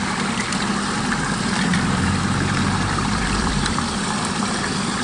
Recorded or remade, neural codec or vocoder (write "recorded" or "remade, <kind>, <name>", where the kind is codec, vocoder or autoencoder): remade, vocoder, BigVGAN v2